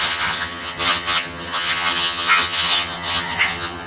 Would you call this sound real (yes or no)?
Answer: no